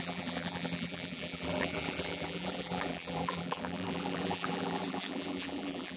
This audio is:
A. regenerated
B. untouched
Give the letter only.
A